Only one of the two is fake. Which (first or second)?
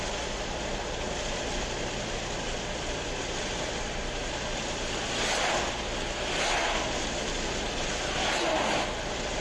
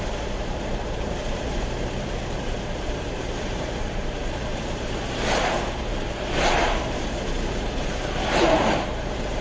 second